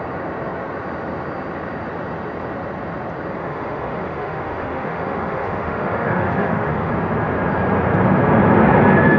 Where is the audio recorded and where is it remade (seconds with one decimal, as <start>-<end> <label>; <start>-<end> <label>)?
0.0-3.4 recorded; 3.4-6.9 remade; 6.9-9.2 recorded